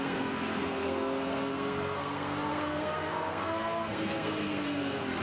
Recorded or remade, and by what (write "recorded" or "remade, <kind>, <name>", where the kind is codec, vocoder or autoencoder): remade, codec, SNAC